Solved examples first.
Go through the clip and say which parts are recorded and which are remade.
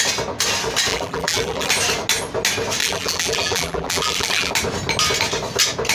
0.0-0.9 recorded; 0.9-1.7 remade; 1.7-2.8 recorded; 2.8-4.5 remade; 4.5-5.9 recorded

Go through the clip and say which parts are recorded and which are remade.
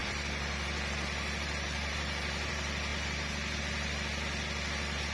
0.0-2.5 remade; 2.5-5.1 recorded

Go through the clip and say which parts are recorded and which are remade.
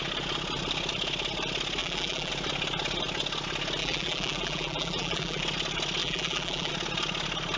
0.0-1.8 recorded; 1.8-2.3 remade; 2.3-3.8 recorded; 3.8-5.4 remade; 5.4-6.0 recorded; 6.0-6.7 remade; 6.7-7.6 recorded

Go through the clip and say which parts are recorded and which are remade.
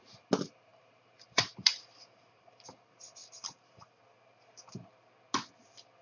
0.0-0.7 recorded; 0.7-2.4 remade; 2.4-3.2 recorded; 3.2-4.0 remade; 4.0-6.0 recorded